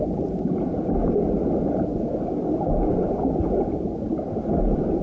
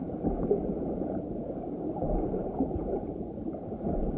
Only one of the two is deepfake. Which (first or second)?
second